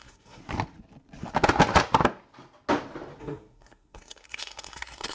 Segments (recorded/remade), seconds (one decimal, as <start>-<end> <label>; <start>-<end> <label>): 0.0-0.4 remade; 0.4-3.2 recorded; 3.2-5.1 remade